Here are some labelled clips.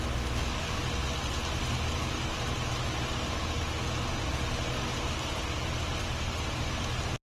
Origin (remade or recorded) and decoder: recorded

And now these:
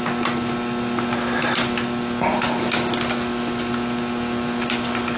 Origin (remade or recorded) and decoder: recorded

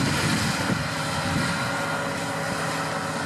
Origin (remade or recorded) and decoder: recorded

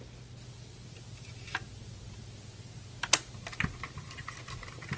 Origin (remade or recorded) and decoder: recorded